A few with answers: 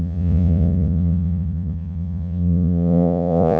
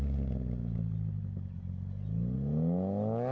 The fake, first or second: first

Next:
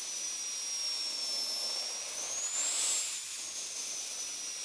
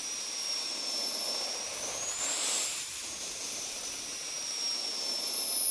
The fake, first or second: second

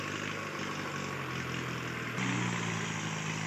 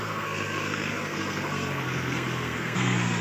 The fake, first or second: second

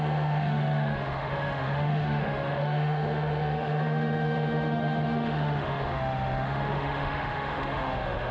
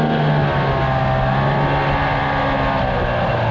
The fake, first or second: first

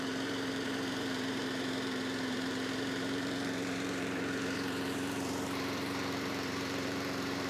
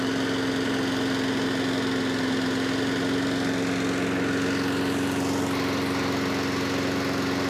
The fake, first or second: first